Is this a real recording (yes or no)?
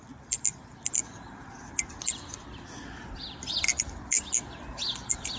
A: yes